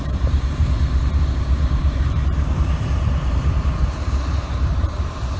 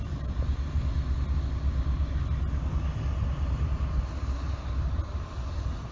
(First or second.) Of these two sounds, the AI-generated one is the first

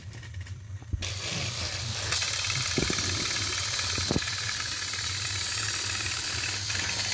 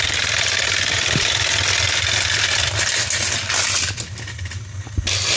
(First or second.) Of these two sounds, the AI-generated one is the first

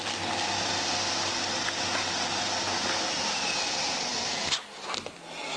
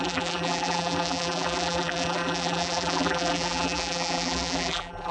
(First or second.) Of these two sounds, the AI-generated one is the second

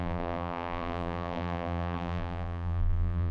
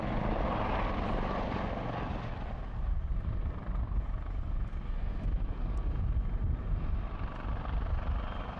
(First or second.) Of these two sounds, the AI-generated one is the first